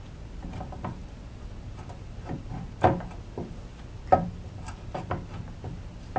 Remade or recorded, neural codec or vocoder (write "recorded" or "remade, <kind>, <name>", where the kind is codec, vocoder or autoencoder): recorded